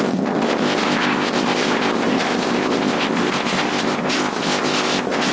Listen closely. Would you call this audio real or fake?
fake